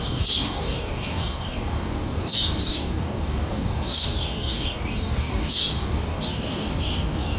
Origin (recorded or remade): remade